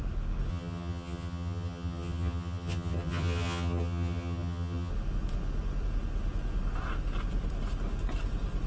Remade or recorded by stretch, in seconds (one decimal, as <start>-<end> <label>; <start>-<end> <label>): 0.0-0.5 recorded; 0.5-4.9 remade; 4.9-8.7 recorded